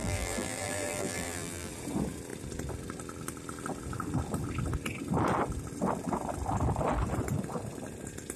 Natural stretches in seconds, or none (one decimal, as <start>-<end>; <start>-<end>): 1.7-8.4